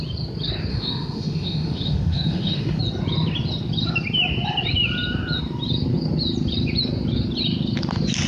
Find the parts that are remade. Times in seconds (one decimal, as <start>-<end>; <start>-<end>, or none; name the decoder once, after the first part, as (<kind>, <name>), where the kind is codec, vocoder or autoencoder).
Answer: 0.7-2.8 (autoencoder, DAC-VAE)

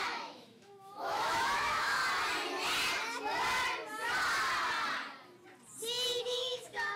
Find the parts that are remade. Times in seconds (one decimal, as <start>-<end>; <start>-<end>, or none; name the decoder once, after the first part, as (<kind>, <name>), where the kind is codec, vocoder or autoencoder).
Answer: 0.0-2.0 (autoencoder, DAC-VAE); 6.2-7.0

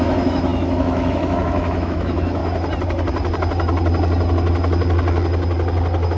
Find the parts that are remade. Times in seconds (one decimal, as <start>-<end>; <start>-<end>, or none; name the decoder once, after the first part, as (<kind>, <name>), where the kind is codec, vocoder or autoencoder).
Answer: 0.0-2.4 (autoencoder, DAC-VAE)

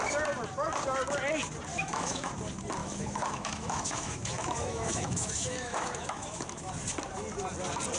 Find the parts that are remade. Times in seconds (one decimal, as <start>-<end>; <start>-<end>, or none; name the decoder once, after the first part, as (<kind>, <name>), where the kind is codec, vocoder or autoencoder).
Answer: 1.7-2.3 (autoencoder, DAC-VAE); 2.8-6.7

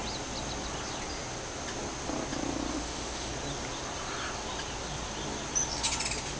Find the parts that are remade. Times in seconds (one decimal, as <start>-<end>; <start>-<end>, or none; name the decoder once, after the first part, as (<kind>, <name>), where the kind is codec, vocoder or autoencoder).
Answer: 2.7-3.3 (autoencoder, DAC-VAE)